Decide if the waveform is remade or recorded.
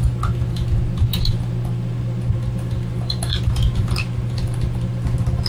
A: recorded